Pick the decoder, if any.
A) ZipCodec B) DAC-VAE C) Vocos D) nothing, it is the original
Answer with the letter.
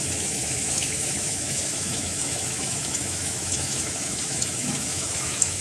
B